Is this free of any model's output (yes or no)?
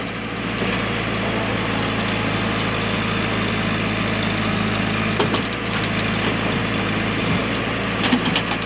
yes